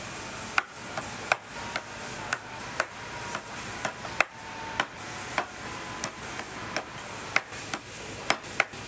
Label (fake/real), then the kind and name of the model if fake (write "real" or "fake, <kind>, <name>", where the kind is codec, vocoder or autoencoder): real